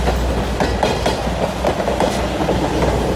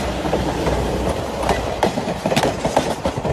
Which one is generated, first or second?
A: second